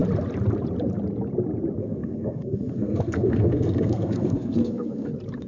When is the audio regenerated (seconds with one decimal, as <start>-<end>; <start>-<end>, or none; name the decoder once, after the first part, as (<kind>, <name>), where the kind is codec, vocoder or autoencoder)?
1.8-5.1 (codec, SNAC)